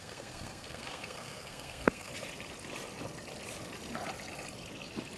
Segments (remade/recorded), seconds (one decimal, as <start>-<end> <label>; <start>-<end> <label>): 0.0-2.1 remade; 2.1-5.2 recorded